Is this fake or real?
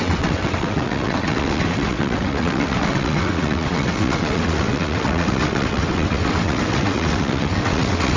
fake